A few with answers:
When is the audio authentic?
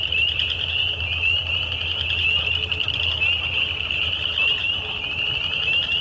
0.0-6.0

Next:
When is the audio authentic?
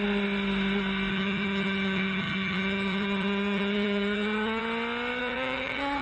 0.0-1.1; 4.6-5.2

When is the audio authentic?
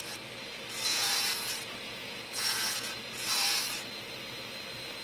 0.0-0.9; 3.6-5.0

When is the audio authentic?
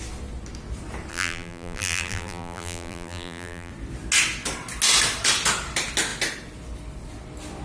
0.0-1.1; 3.7-7.6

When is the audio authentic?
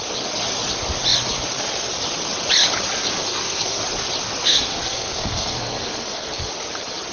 0.0-3.2; 3.8-4.4; 6.5-7.1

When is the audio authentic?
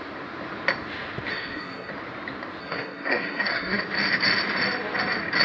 0.0-1.3; 1.9-2.6; 3.8-5.4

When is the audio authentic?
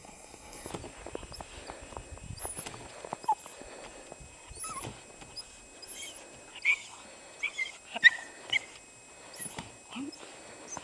0.7-10.8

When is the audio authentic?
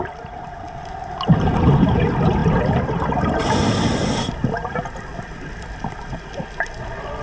0.0-7.2